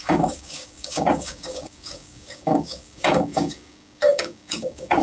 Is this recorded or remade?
remade